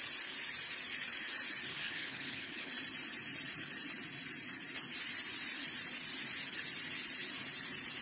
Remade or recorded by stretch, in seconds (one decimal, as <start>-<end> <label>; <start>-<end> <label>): 0.0-1.7 recorded; 1.7-2.7 remade; 2.7-8.0 recorded